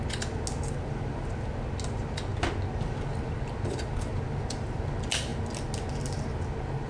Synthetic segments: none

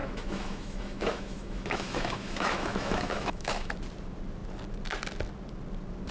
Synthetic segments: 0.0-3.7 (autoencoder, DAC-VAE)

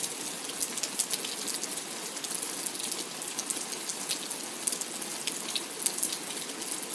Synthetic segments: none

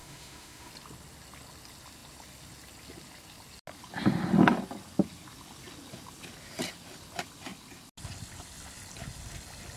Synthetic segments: 0.0-0.7 (autoencoder, DAC-VAE)

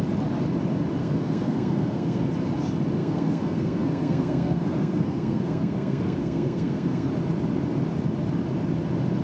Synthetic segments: 1.0-2.3 (codec, SNAC); 3.0-7.1

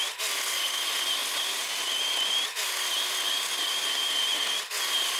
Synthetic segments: none

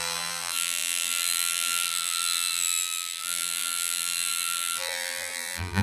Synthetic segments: 0.0-5.8 (vocoder, BigVGAN v2)

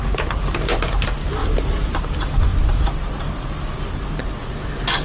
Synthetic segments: 1.4-2.1 (vocoder, BigVGAN v2); 2.5-4.5